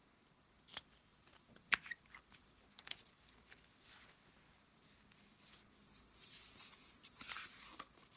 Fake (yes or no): no